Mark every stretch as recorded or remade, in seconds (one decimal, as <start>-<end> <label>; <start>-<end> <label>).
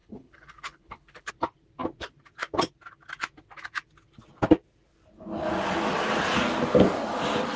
0.0-1.3 remade; 1.3-7.6 recorded